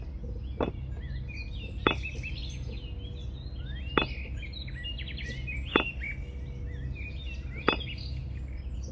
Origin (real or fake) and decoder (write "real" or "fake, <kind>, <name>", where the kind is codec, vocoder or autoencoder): real